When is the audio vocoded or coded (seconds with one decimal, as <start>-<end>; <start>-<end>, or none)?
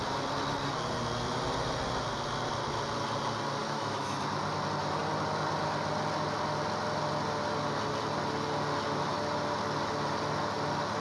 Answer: 3.6-4.2